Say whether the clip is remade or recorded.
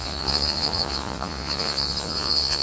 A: remade